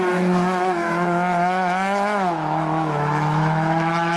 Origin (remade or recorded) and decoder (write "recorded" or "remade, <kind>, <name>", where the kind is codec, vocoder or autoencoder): remade, autoencoder, DAC-VAE